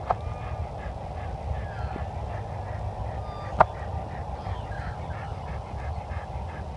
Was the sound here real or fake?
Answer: real